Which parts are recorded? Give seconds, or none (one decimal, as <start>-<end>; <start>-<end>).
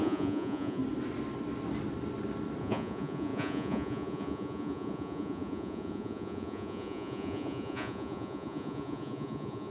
0.8-2.6